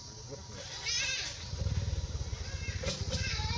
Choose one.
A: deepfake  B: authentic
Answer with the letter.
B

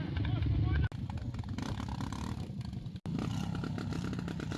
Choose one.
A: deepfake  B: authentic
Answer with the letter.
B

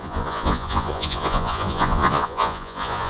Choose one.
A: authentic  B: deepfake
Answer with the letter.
B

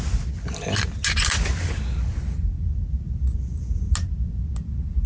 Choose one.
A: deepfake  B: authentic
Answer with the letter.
B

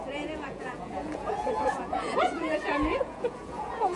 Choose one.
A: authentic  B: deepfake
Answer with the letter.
B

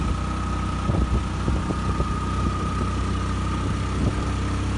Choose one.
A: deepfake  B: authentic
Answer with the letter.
B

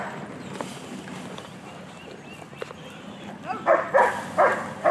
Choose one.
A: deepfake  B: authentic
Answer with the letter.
B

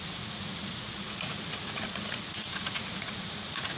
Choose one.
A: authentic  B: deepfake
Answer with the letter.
B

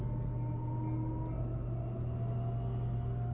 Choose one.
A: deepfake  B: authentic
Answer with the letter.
B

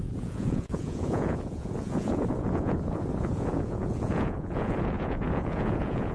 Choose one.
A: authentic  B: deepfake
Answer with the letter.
B